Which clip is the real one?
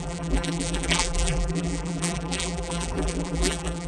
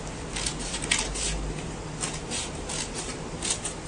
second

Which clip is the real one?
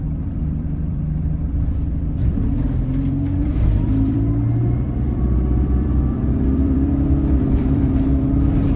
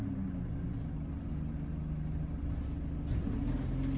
second